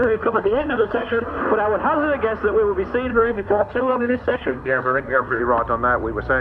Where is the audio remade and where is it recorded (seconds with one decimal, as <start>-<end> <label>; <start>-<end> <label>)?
0.0-1.4 remade; 1.4-3.1 recorded; 3.1-5.4 remade; 5.4-6.4 recorded